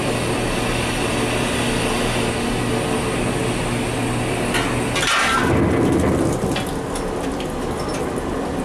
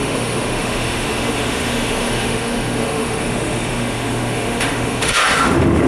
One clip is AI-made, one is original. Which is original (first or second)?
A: first